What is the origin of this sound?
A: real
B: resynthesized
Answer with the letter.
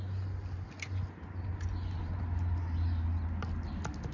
A